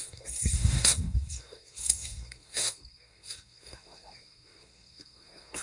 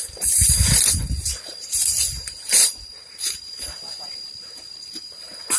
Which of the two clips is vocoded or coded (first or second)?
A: first